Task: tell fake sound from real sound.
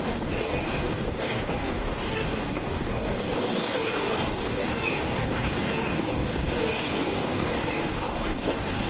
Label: fake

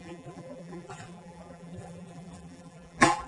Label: fake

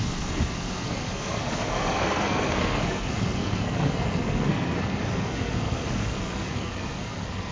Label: fake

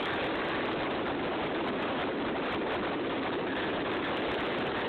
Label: fake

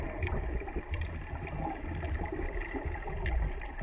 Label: real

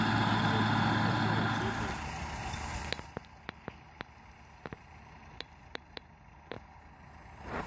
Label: real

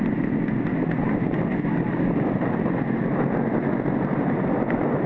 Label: real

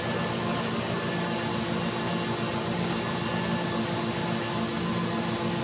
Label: real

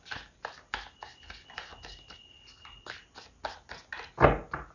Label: real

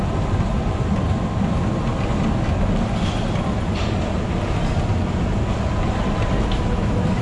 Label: real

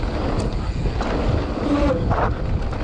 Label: real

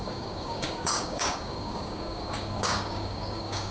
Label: fake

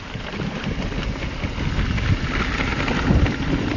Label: real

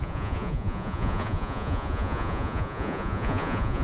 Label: fake